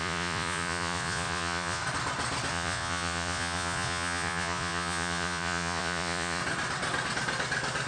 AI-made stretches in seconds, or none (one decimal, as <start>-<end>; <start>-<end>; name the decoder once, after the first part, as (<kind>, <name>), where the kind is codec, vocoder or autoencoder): 0.0-1.8 (vocoder, Vocos); 2.5-6.4